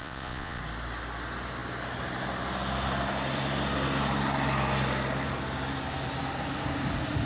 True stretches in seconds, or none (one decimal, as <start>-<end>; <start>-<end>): 0.6-7.2

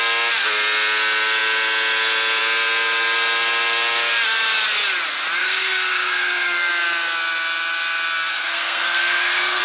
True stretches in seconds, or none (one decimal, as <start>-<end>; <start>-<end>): 0.0-5.4; 6.7-8.3

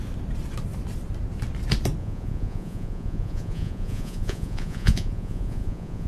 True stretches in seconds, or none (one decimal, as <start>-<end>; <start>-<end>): 0.0-2.0